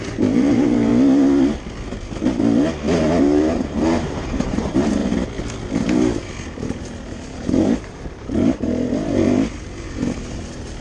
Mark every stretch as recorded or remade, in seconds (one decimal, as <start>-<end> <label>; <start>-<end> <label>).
0.0-0.9 remade; 0.9-3.2 recorded; 3.2-5.0 remade; 5.0-5.8 recorded; 5.8-10.8 remade